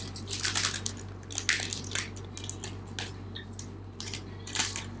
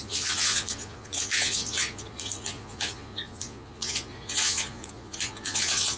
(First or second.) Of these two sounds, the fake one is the second